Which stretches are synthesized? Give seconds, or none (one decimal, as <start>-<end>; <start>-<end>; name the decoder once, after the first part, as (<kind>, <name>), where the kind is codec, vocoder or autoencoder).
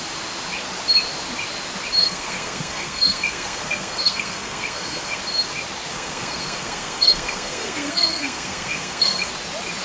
2.0-5.2 (codec, SNAC); 5.9-9.3